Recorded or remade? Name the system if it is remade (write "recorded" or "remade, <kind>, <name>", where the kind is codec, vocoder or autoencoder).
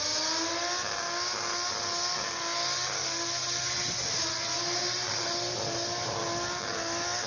recorded